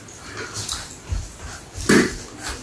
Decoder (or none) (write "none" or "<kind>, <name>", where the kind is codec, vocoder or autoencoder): none